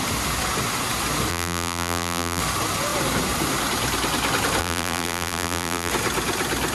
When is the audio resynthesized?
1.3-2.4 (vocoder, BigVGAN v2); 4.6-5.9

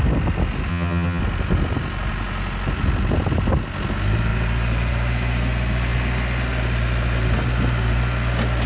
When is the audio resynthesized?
0.7-1.2 (vocoder, HiFi-GAN)

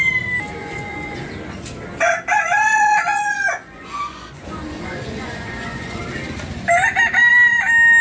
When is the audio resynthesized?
0.6-1.3 (vocoder, Vocos); 2.3-6.0

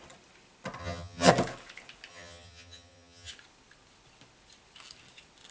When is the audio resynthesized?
0.8-1.3 (vocoder, HiFi-GAN); 2.1-3.3

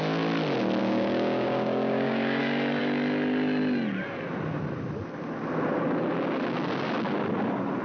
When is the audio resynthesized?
0.8-2.4 (codec, DAC)

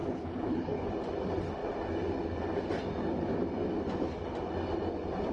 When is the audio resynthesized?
0.0-0.9 (codec, HILCodec)

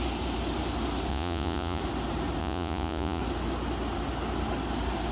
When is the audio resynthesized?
1.1-1.8 (vocoder, Vocos); 2.4-3.2

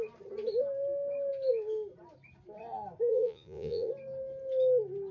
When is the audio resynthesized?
3.1-3.9 (vocoder, Vocos)